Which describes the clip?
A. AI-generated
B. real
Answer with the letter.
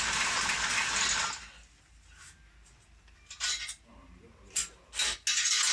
B